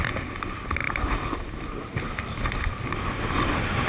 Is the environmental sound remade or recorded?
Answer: recorded